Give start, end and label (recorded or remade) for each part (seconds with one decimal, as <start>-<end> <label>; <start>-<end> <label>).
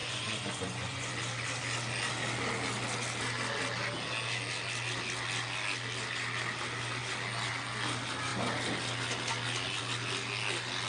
0.0-1.1 remade; 1.1-10.9 recorded